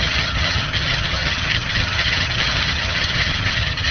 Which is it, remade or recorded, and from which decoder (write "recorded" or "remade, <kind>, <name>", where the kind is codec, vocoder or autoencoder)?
remade, vocoder, HiFi-GAN